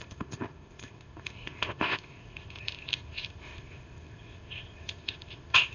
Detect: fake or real fake